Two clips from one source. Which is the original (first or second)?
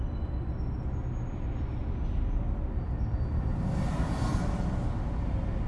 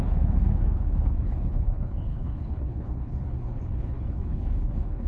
first